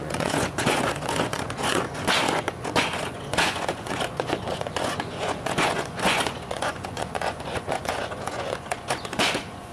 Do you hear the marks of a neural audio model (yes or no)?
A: yes